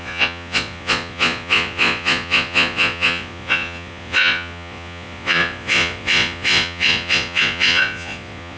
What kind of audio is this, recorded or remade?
remade